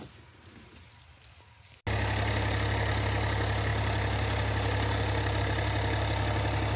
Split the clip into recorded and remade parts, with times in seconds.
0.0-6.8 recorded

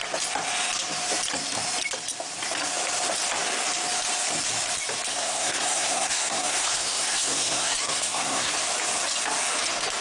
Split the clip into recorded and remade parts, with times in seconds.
0.0-5.1 recorded; 5.1-8.5 remade; 8.5-10.0 recorded

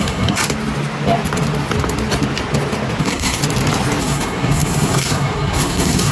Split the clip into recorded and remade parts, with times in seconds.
0.0-0.4 remade; 0.4-3.0 recorded; 3.0-3.4 remade; 3.4-4.0 recorded; 4.0-6.1 remade

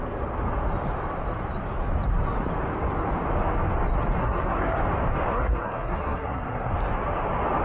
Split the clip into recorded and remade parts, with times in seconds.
0.0-4.2 recorded; 4.2-4.8 remade; 4.8-5.3 recorded; 5.3-6.7 remade; 6.7-7.6 recorded